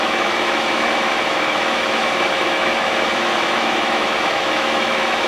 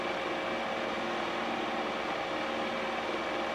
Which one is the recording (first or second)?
second